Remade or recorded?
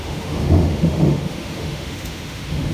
remade